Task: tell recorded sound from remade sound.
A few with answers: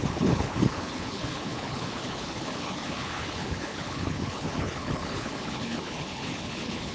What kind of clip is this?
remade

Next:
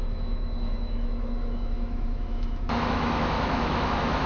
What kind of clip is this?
remade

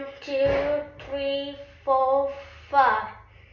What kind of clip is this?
recorded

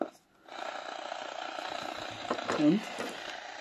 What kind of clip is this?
recorded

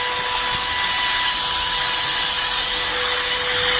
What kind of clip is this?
recorded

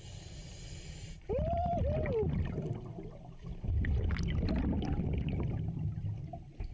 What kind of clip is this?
recorded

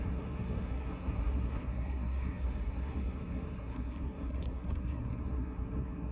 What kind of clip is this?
remade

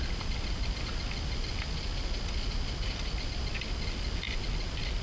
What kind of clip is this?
recorded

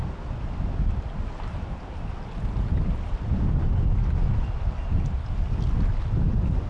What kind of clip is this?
recorded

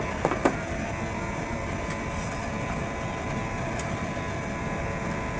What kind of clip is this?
recorded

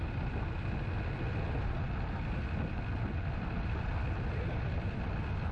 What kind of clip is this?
recorded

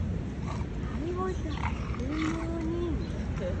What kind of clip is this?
recorded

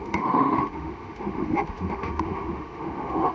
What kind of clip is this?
remade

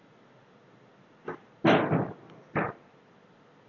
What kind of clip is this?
recorded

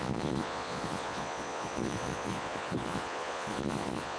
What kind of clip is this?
remade